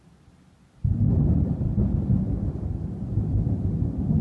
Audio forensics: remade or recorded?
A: recorded